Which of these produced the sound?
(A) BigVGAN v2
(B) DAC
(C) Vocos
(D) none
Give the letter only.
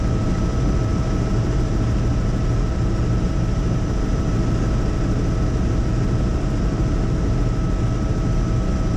D